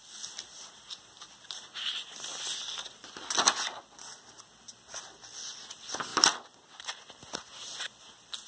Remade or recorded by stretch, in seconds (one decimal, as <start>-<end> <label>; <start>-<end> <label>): 0.0-8.5 recorded